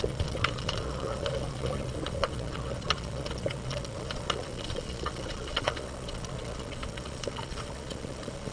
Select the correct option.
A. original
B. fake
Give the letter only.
B